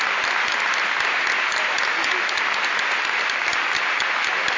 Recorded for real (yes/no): yes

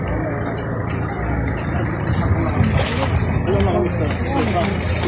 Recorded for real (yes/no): yes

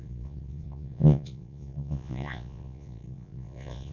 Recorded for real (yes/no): no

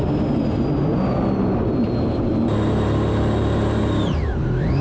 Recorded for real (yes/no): yes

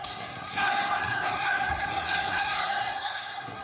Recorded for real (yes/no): no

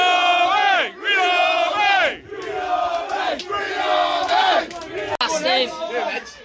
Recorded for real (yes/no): yes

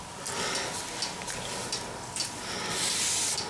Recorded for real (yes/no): yes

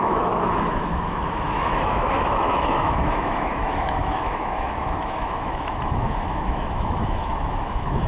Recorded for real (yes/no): no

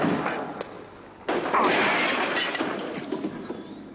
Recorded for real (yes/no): yes